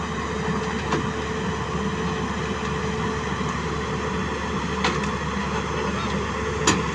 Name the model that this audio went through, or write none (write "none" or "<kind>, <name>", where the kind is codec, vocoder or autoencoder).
none